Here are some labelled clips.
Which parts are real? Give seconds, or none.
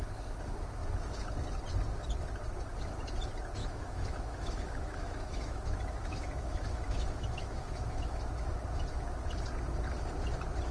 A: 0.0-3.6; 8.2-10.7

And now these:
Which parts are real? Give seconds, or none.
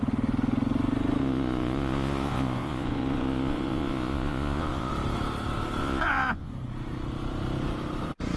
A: 0.0-1.2; 4.9-5.8; 6.5-8.4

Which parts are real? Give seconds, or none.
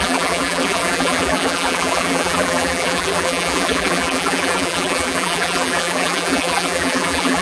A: none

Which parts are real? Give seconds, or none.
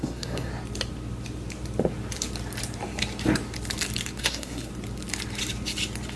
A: 0.5-4.2; 4.7-6.2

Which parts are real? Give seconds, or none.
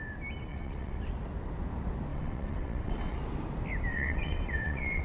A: 0.0-0.5; 1.0-2.1; 3.2-3.9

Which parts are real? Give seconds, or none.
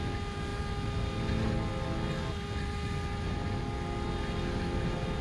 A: 0.0-5.2